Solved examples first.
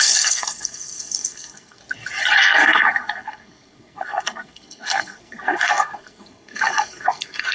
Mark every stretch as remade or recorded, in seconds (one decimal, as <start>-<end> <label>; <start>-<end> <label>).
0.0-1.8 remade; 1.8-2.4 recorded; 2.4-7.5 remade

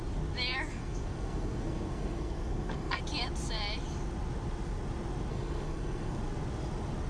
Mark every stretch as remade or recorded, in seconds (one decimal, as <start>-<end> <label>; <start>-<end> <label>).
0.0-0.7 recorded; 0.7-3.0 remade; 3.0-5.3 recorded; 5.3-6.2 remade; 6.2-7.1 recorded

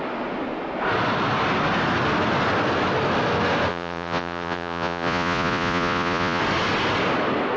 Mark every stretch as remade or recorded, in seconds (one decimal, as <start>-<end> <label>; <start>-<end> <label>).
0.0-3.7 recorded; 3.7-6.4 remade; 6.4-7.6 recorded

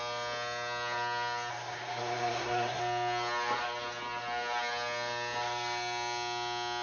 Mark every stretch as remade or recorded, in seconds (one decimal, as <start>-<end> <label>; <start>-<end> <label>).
0.0-1.5 recorded; 1.5-2.8 remade; 2.8-6.8 recorded